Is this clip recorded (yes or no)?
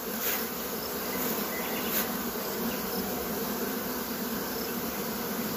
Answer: yes